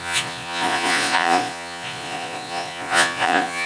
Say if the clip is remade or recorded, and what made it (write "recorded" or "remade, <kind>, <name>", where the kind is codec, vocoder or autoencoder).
remade, vocoder, Vocos